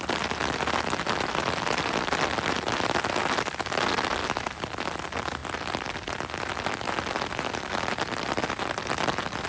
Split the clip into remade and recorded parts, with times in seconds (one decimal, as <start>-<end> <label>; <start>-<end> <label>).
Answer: 0.0-9.5 recorded